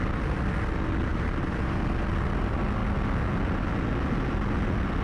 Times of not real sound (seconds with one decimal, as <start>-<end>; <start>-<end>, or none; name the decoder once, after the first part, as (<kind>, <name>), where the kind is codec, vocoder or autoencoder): 1.1-1.8 (vocoder, BigVGAN v2)